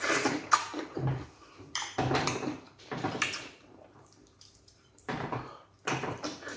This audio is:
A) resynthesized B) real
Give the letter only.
A